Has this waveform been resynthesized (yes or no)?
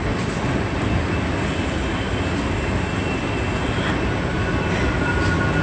no